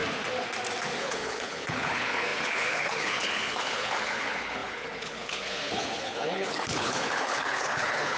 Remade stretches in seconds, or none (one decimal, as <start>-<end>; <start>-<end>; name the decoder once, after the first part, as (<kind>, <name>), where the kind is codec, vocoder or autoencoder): 1.0-8.2 (codec, HILCodec)